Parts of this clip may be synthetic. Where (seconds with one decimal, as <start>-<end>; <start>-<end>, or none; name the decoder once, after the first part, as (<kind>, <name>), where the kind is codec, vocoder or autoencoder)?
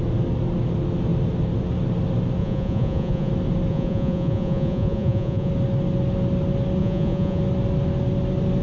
2.4-3.3 (vocoder, Vocos); 3.7-5.5; 6.8-7.4